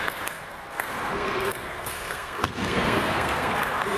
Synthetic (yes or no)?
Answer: yes